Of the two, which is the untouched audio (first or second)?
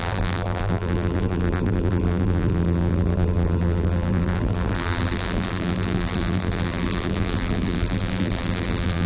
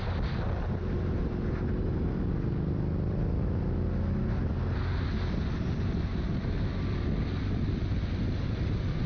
second